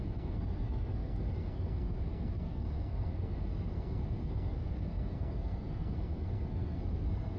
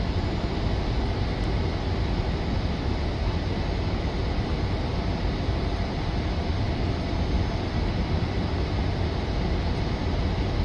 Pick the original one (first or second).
second